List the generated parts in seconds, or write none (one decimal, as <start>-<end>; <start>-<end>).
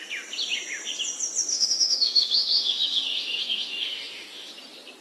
1.5-4.5